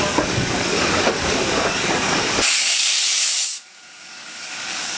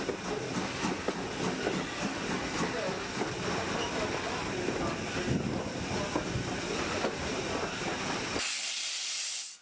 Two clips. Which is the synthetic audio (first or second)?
first